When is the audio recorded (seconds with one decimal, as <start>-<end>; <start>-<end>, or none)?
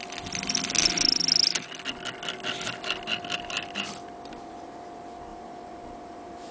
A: 0.0-5.3